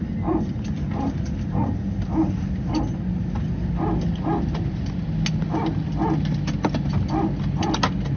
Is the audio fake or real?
real